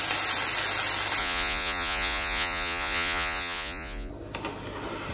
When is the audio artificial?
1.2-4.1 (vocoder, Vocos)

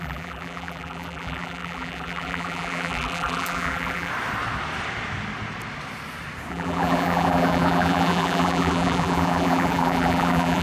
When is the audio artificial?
0.0-4.1 (vocoder, BigVGAN v2); 6.5-10.6

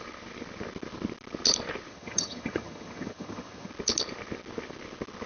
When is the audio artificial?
1.9-3.7 (vocoder, HiFi-GAN)

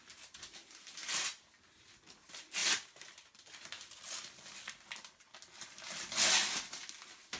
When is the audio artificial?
none